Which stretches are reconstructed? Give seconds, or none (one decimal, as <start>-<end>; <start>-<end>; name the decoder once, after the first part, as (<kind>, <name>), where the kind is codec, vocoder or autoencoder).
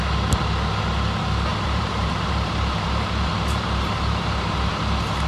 1.5-4.7 (vocoder, BigVGAN v2)